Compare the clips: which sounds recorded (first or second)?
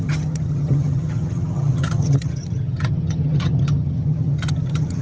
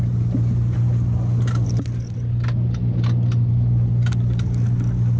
second